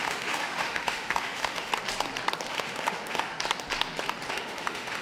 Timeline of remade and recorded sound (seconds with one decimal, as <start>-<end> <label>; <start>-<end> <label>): 0.0-1.7 remade; 1.7-2.5 recorded; 2.5-3.3 remade; 3.3-4.3 recorded; 4.3-5.0 remade